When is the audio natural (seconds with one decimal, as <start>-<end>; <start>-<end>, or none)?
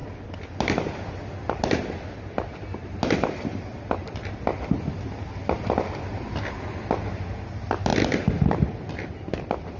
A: 0.0-9.8